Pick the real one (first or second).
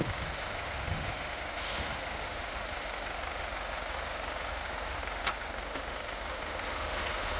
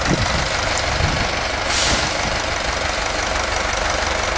second